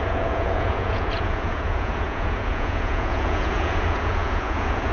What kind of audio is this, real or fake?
fake